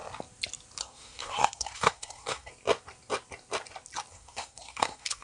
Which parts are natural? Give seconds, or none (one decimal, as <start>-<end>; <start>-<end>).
0.0-0.8; 2.5-4.1